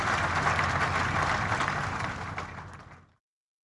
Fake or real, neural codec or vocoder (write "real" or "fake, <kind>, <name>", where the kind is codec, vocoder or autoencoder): real